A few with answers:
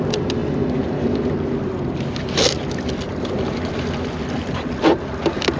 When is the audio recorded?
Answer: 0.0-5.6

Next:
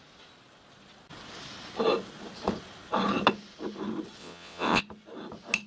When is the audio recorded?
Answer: 0.0-4.2; 4.8-5.7

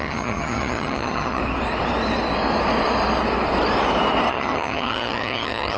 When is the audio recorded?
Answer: 1.4-4.3

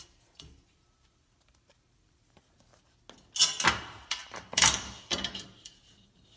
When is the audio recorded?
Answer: 2.7-3.8

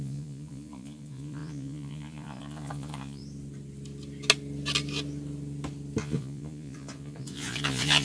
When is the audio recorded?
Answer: 3.2-6.0

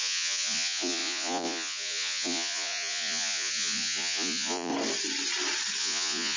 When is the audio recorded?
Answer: 4.7-5.8

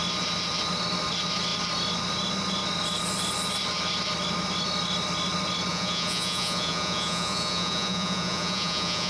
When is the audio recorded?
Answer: 0.0-5.7